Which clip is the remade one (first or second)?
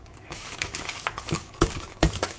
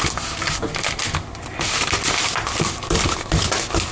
first